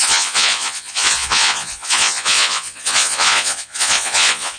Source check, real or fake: fake